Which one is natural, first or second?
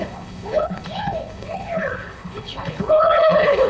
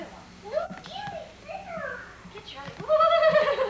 second